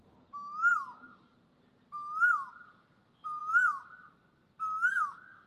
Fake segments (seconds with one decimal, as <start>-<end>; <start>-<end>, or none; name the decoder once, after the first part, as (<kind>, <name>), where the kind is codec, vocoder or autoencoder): none

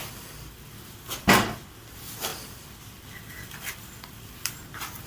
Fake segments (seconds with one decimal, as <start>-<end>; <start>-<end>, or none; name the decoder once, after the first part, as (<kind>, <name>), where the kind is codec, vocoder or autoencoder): 0.0-0.7 (vocoder, BigVGAN v2); 2.3-4.5

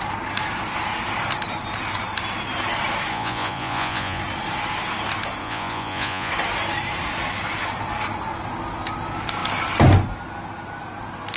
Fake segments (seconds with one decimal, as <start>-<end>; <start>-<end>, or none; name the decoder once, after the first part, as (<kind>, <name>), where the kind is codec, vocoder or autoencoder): 3.1-4.2 (vocoder, Vocos); 5.4-6.3